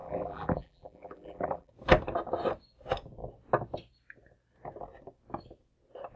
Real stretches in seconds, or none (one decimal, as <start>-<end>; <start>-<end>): 1.7-6.2